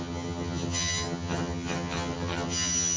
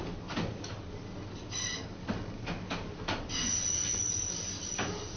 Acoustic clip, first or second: second